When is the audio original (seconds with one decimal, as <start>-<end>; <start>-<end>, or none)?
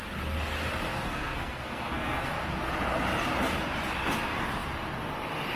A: 0.0-0.9; 2.3-5.6